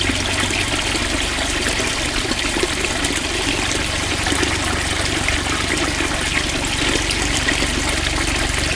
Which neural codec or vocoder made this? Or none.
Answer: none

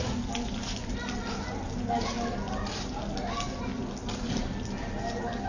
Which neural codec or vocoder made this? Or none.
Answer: none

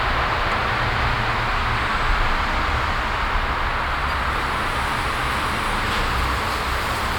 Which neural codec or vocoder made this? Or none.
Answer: none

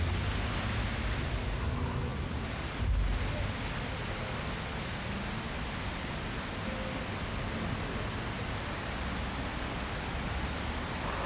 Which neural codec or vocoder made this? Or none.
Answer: none